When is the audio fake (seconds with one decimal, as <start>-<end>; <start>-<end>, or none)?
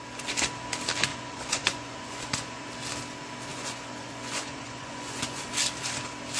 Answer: 1.1-2.7; 3.5-5.5